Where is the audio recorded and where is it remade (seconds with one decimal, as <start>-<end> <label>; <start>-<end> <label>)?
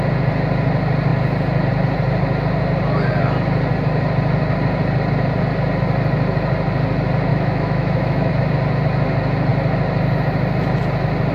0.0-7.3 recorded; 7.3-8.3 remade; 8.3-11.3 recorded